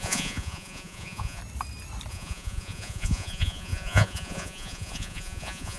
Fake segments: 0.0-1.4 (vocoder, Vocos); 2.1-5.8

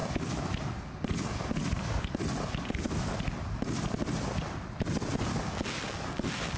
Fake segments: none

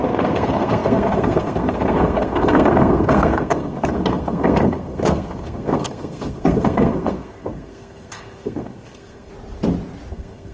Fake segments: 0.0-9.3 (codec, SNAC); 10.1-10.5

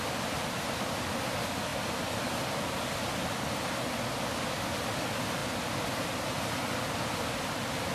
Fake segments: none